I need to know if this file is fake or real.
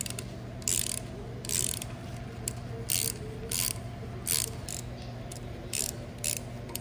real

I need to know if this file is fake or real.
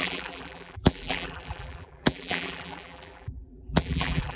fake